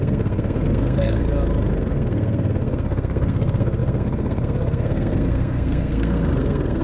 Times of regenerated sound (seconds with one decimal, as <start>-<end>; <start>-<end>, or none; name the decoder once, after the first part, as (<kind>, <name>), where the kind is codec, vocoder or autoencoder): 0.0-1.2 (codec, SNAC); 1.7-6.8

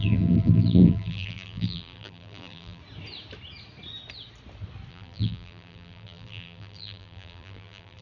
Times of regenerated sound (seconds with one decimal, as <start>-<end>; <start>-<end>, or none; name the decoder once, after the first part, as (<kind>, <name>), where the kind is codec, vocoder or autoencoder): 0.0-2.8 (vocoder, BigVGAN v2); 4.9-8.0

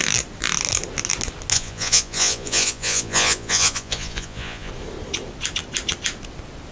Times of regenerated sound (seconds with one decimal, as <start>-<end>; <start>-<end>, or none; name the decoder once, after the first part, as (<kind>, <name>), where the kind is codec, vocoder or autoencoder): 1.5-4.7 (vocoder, Vocos)

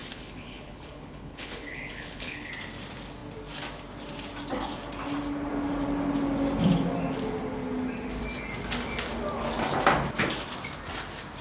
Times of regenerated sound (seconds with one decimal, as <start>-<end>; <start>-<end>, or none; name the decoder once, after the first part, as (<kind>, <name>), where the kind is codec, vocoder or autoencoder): 0.0-2.5 (codec, HILCodec)

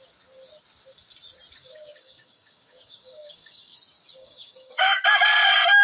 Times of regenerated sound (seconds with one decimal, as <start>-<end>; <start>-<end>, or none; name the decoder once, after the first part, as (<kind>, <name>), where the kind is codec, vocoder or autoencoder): 1.6-3.8 (codec, DAC); 4.2-5.0